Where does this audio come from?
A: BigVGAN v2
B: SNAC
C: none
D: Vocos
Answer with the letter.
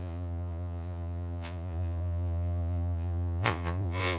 D